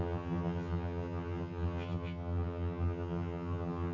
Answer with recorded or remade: remade